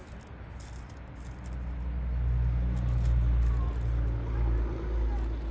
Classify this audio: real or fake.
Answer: real